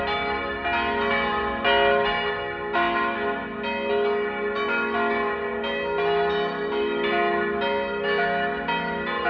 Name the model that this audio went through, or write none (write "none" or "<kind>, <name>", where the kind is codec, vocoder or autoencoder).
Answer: none